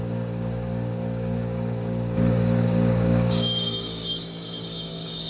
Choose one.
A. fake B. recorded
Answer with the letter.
A